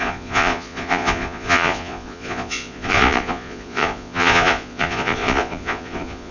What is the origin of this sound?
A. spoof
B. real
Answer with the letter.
A